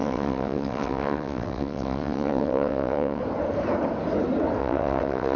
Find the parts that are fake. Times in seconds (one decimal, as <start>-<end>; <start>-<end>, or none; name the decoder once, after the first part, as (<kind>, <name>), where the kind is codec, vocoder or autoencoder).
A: 0.0-3.2 (vocoder, WaveNeXt); 4.6-5.4